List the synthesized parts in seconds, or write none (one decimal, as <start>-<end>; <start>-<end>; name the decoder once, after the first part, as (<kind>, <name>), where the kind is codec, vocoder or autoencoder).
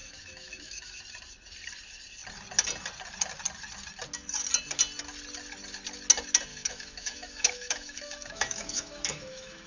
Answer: 0.0-1.0 (autoencoder, DAC-VAE); 6.5-9.7